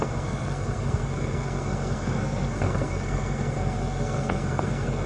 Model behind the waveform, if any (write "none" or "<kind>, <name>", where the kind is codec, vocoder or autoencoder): codec, SNAC